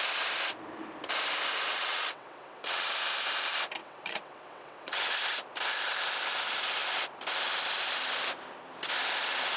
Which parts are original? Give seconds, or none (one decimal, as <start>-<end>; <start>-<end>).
0.0-1.7; 2.9-3.8; 5.1-9.6

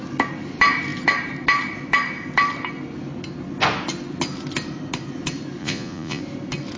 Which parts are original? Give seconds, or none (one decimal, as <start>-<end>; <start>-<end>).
0.0-5.6; 6.2-6.8

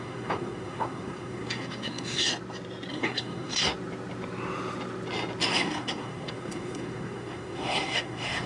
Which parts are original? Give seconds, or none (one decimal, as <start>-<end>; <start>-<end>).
2.3-2.9; 3.7-5.5